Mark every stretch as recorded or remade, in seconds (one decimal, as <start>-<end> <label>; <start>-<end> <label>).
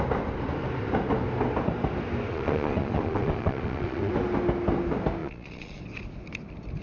0.0-2.3 recorded; 2.3-4.1 remade; 4.1-5.2 recorded; 5.2-5.8 remade; 5.8-6.8 recorded